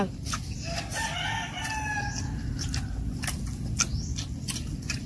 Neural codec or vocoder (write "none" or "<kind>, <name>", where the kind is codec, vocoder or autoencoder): none